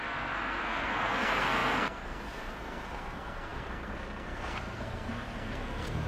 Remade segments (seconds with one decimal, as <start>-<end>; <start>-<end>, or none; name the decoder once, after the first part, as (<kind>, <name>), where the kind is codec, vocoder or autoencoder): 0.0-6.1 (codec, SNAC)